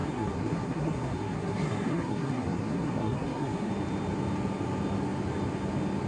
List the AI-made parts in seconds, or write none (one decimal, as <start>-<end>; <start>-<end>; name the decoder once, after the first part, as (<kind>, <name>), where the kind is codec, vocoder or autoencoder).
0.0-3.7 (codec, SNAC)